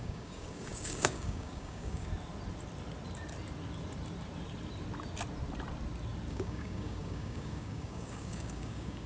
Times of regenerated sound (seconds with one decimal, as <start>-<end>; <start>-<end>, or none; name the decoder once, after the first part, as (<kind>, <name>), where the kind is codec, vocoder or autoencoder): 0.0-2.1 (codec, DAC); 6.3-9.1